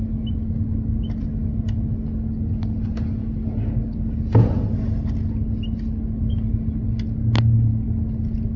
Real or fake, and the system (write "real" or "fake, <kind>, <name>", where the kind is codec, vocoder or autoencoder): real